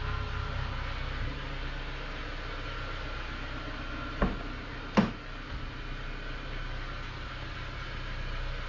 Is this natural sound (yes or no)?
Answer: yes